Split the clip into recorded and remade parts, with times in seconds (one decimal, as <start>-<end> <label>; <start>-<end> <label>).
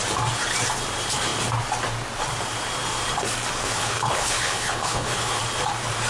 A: 0.0-3.6 recorded; 3.6-5.4 remade; 5.4-6.1 recorded